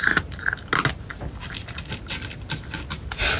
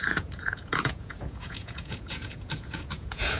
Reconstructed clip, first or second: second